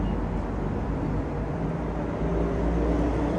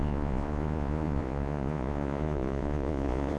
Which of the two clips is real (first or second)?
first